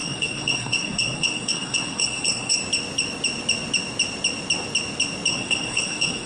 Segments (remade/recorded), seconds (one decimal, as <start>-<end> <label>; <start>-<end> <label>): 0.0-2.6 remade; 2.6-5.3 recorded; 5.3-6.3 remade